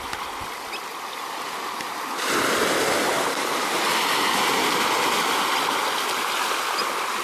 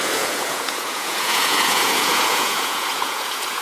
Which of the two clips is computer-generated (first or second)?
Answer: second